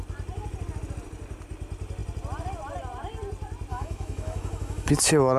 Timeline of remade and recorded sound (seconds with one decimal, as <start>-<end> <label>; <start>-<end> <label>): 0.0-3.7 recorded; 3.7-4.9 remade; 4.9-5.4 recorded